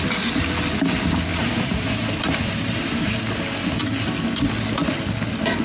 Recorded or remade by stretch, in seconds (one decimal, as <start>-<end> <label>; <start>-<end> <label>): 0.0-1.3 recorded; 1.3-3.2 remade; 3.2-5.6 recorded